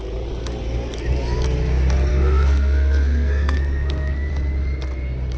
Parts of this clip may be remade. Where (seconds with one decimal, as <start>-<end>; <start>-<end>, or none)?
2.1-4.3